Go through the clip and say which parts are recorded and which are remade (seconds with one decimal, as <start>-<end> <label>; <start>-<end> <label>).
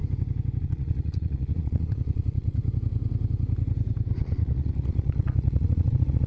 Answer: 0.0-0.6 recorded; 0.6-2.6 remade; 2.6-4.2 recorded; 4.2-6.3 remade